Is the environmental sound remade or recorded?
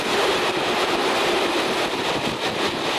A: recorded